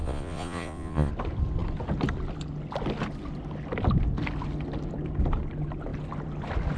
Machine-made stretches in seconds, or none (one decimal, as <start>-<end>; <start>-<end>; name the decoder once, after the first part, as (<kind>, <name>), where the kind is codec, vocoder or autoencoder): 0.0-1.1 (vocoder, Vocos)